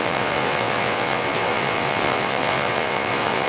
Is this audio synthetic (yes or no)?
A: yes